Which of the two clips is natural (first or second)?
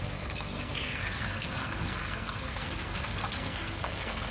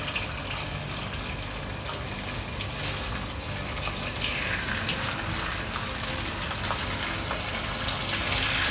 second